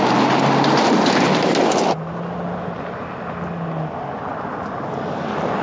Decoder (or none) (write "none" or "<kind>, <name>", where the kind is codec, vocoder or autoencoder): none